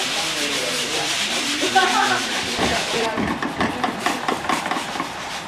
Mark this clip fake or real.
fake